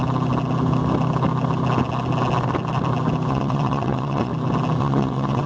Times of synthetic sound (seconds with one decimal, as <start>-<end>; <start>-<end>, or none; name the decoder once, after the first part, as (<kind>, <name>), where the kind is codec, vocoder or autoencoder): 3.3-4.3 (vocoder, WaveNeXt); 4.8-5.5